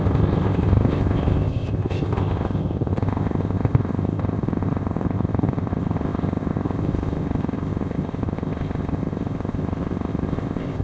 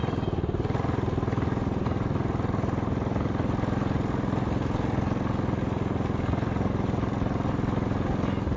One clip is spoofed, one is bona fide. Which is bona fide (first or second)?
second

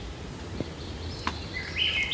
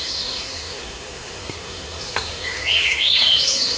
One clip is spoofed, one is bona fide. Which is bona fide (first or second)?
first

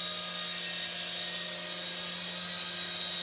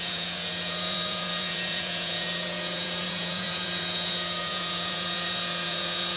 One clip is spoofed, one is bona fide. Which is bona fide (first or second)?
first